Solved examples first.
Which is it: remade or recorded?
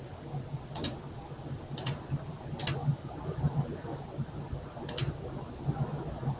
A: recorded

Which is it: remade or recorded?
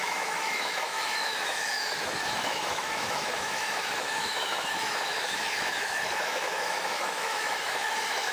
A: remade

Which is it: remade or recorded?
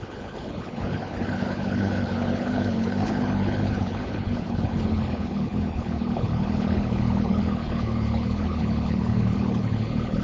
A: remade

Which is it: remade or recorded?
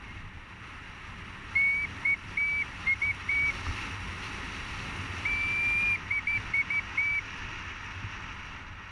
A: recorded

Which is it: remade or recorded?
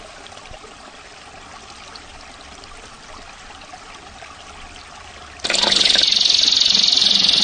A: recorded